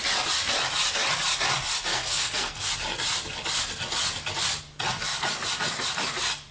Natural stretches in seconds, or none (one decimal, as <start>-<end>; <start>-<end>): 0.0-1.9; 2.7-6.5

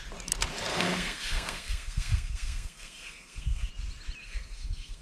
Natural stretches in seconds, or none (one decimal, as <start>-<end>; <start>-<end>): 0.0-0.7; 3.7-4.2

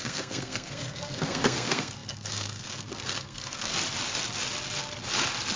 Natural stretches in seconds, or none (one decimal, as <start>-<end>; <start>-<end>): 3.7-5.6

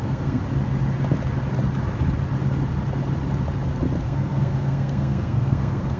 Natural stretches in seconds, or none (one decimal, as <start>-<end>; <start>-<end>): 0.4-4.0

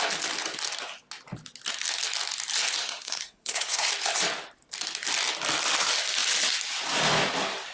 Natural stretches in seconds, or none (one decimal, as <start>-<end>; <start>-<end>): 0.0-2.8; 3.9-7.7

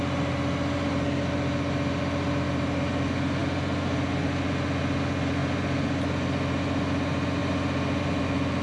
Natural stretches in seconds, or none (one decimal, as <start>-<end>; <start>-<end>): 0.0-8.6